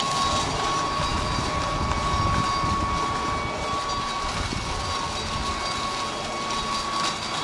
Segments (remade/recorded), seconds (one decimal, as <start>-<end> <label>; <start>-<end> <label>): 0.0-7.4 recorded

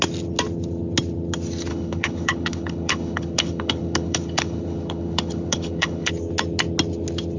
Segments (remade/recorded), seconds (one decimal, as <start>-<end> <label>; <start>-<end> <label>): 0.0-1.7 recorded; 1.7-6.1 remade; 6.1-7.4 recorded

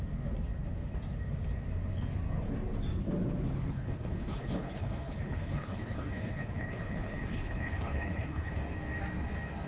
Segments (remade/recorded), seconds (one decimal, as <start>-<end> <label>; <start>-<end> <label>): 0.0-3.6 recorded; 3.6-8.6 remade; 8.6-9.7 recorded

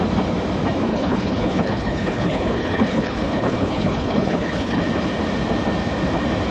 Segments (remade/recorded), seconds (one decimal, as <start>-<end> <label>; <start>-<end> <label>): 0.0-0.9 recorded; 0.9-4.8 remade; 4.8-6.5 recorded